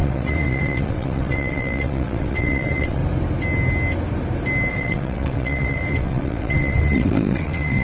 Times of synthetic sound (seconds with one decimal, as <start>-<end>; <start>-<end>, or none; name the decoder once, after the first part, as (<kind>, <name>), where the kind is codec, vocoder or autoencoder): 0.0-3.0 (vocoder, WaveNeXt); 4.7-7.8